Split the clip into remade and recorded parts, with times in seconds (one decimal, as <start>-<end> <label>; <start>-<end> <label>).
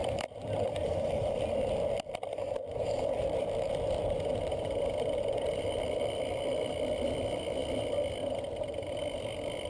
0.0-7.6 remade; 7.6-9.0 recorded; 9.0-9.7 remade